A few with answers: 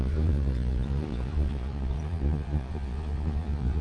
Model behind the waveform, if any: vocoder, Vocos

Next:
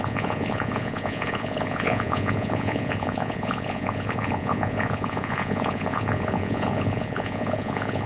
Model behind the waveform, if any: vocoder, Vocos